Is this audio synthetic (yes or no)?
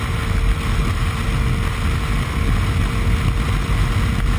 no